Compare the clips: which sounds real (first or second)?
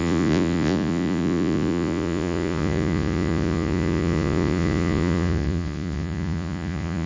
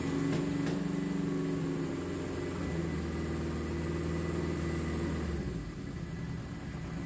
second